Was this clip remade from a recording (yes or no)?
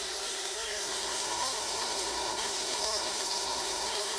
yes